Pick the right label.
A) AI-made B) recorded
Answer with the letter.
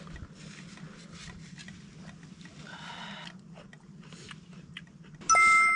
B